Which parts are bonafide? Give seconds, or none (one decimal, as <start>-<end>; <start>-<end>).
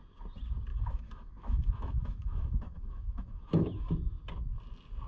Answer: 0.0-0.7; 3.8-5.1